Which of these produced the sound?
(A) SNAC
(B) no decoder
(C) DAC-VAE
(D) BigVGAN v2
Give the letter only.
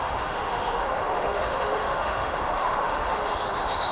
C